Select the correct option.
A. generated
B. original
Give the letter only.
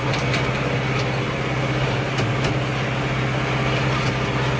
B